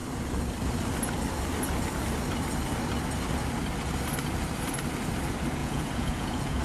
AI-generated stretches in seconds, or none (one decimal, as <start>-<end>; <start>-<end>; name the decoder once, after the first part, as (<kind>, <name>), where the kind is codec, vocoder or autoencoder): 5.6-6.6 (vocoder, Vocos)